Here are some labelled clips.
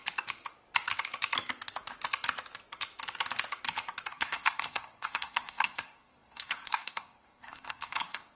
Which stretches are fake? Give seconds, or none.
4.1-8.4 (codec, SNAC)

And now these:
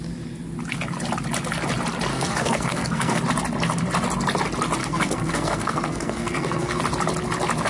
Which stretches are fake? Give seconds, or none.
2.1-3.2 (codec, SNAC); 4.8-6.8

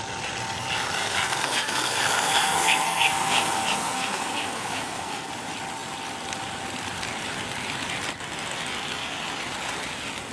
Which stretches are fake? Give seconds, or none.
1.0-5.3 (codec, SNAC)

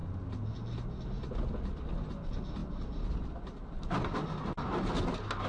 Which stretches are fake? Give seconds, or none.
none

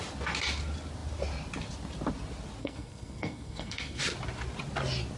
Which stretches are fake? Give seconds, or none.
2.6-4.0 (codec, SNAC)

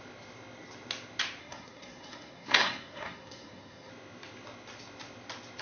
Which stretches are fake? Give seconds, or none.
1.4-3.9 (codec, SNAC)

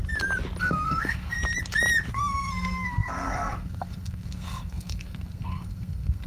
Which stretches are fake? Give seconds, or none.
0.6-1.4 (codec, SNAC); 2.1-6.3

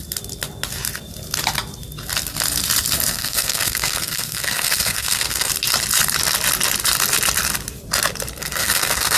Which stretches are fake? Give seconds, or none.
3.1-5.5 (codec, SNAC); 8.4-9.2